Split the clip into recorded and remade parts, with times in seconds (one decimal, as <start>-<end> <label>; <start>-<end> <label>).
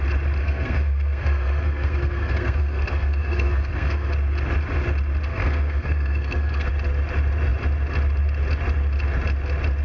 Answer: 0.0-0.4 recorded; 0.4-4.1 remade; 4.1-5.3 recorded; 5.3-6.7 remade; 6.7-9.8 recorded